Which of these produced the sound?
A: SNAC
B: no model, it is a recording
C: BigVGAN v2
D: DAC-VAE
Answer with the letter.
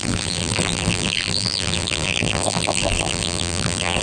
C